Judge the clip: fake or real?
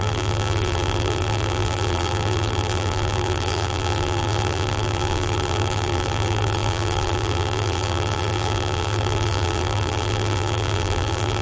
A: fake